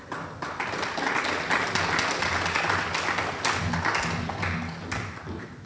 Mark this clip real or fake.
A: real